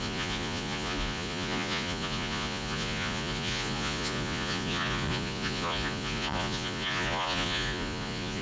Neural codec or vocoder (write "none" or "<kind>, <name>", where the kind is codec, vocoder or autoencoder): vocoder, Vocos